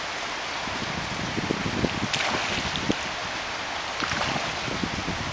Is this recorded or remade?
recorded